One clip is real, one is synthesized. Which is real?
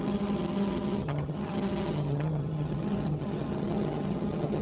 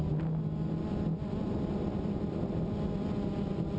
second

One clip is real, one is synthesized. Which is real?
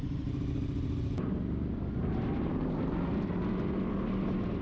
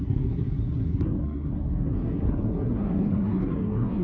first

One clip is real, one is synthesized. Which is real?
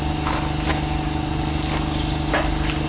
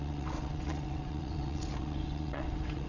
first